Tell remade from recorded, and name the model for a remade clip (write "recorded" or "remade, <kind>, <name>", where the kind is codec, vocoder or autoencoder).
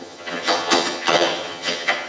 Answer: remade, vocoder, HiFi-GAN